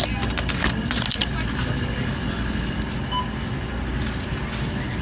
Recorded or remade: recorded